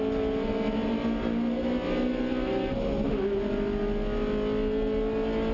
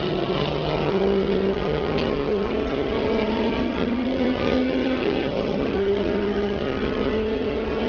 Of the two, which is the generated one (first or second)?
second